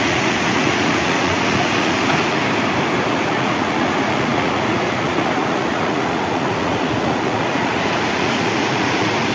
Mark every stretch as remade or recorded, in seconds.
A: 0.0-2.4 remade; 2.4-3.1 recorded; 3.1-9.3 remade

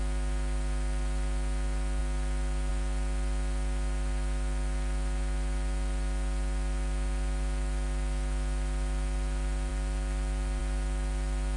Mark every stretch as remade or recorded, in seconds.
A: 0.0-11.6 recorded